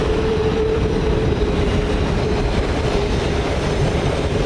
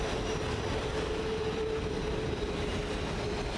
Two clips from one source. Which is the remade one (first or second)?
first